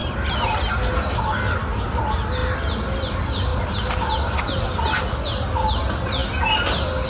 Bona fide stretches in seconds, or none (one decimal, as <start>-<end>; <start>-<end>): 0.0-7.1